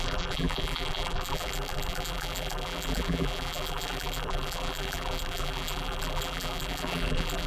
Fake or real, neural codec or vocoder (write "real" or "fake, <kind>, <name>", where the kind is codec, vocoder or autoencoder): fake, vocoder, BigVGAN v2